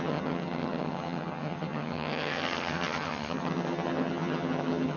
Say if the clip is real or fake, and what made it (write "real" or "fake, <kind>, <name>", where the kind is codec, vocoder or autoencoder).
fake, vocoder, HiFi-GAN